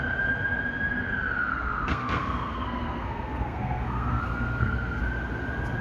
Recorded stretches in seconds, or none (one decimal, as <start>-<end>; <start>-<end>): 0.0-1.5; 5.0-5.8